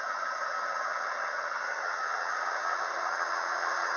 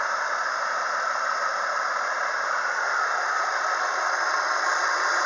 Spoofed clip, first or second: first